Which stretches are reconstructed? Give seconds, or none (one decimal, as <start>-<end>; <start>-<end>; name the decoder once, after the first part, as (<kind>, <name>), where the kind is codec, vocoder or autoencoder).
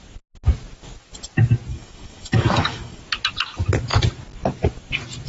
1.7-3.0 (codec, DAC)